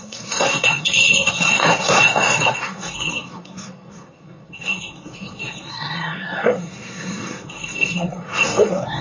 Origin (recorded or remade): remade